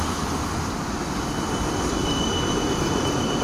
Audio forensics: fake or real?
real